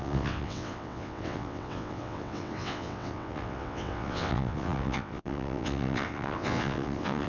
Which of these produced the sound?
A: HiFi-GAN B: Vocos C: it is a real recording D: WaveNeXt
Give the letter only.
D